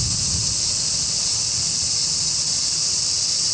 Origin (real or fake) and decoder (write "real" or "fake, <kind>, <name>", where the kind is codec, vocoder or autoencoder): real